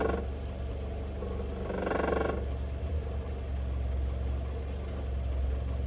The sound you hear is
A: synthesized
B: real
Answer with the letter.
B